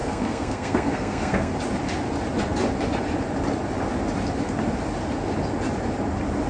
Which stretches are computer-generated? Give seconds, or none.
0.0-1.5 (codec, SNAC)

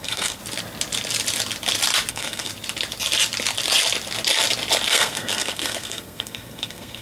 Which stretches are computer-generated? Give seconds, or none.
0.0-0.4 (codec, SNAC); 2.1-2.5; 4.9-7.0

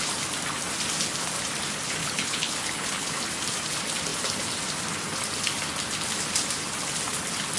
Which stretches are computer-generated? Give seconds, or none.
2.0-3.2 (codec, HILCodec)

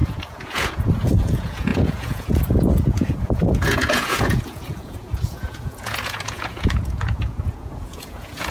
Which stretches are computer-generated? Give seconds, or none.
0.0-8.5 (vocoder, Vocos)

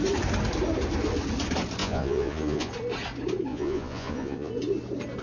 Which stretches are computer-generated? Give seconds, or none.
1.8-2.7 (vocoder, Vocos); 3.5-4.5